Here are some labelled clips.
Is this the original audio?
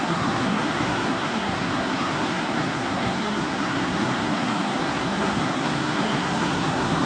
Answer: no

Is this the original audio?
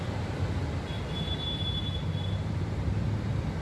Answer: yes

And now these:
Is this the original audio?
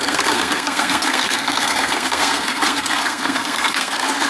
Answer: no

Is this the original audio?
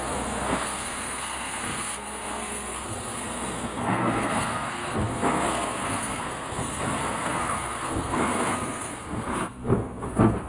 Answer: no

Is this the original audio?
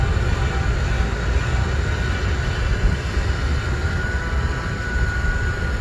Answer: yes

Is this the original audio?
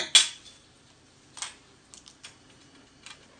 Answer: yes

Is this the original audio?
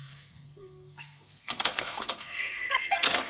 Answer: no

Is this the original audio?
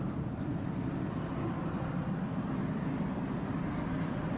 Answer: yes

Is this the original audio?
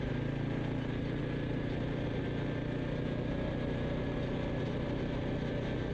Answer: yes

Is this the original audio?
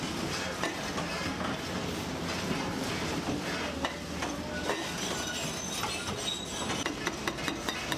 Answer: yes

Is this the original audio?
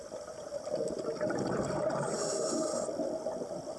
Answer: yes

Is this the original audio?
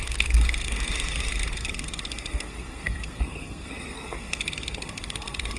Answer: no